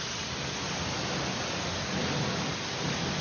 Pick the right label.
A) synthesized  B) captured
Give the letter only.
B